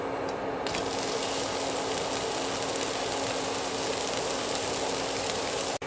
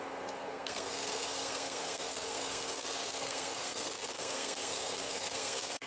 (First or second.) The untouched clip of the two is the first